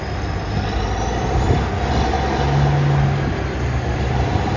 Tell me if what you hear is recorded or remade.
recorded